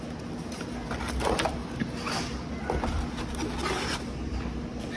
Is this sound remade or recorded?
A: recorded